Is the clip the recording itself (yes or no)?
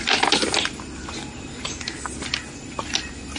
yes